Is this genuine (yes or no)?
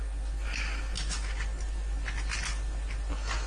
yes